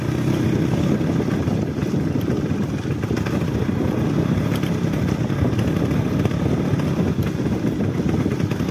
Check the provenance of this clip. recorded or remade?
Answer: remade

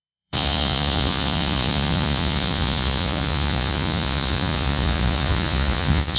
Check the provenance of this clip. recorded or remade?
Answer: remade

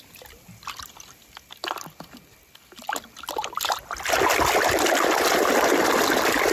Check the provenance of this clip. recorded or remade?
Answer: recorded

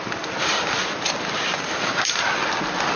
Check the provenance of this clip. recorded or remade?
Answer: recorded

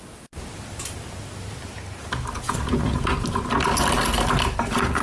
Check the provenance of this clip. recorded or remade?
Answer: recorded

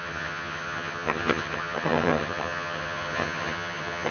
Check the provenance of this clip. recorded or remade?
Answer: remade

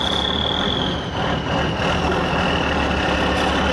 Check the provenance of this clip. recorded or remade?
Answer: recorded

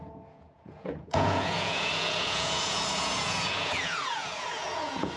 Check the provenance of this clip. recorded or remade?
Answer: remade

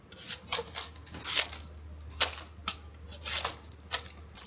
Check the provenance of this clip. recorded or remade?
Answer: recorded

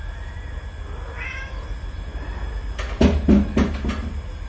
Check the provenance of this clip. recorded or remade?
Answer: recorded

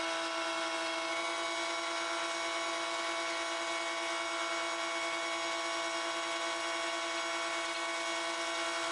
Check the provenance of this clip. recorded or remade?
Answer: recorded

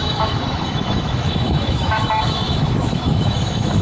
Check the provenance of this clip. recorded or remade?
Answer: remade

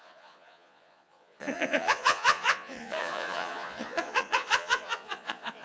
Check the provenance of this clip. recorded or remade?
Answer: remade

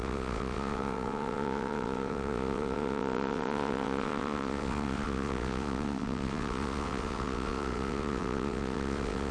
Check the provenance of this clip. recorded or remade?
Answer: remade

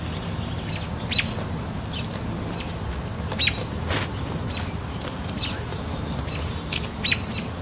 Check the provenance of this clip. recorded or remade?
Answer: recorded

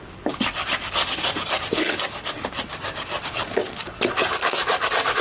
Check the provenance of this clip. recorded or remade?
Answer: remade